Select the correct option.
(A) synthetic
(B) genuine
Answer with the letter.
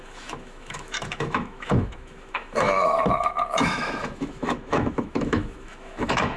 A